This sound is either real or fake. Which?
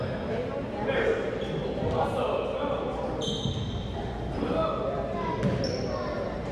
real